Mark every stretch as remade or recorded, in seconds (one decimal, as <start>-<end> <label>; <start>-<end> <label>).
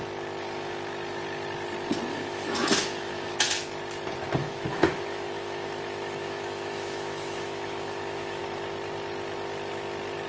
0.0-2.1 recorded; 2.1-3.3 remade; 3.3-4.4 recorded; 4.4-8.4 remade; 8.4-10.3 recorded